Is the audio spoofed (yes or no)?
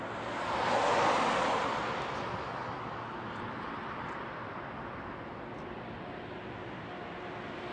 no